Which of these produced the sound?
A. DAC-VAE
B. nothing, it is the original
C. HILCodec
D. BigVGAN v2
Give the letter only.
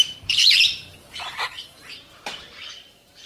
D